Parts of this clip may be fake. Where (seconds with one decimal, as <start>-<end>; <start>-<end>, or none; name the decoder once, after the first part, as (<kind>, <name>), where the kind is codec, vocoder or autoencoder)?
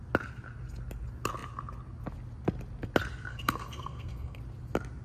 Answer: 3.3-4.4 (codec, SNAC)